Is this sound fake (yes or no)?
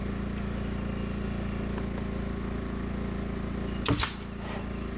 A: no